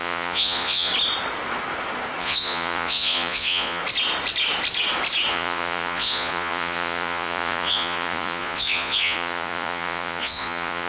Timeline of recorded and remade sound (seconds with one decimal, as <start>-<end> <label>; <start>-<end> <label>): 0.0-0.9 remade; 0.9-2.2 recorded; 2.2-3.8 remade; 3.8-5.3 recorded; 5.3-10.9 remade